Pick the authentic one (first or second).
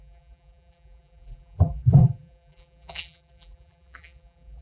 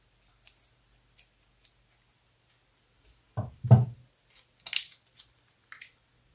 second